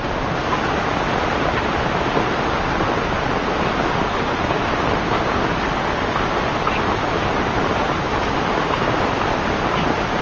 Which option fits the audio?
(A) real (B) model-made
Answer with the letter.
A